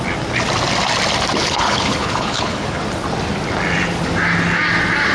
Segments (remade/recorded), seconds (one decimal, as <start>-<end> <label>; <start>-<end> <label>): 0.0-1.4 recorded; 1.4-2.8 remade; 2.8-5.1 recorded